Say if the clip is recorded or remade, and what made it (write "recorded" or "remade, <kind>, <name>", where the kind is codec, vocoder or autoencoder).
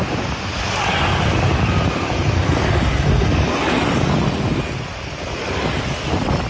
recorded